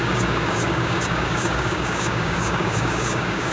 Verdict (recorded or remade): remade